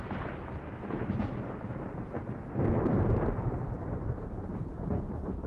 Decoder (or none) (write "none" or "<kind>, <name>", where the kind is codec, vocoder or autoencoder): vocoder, BigVGAN v2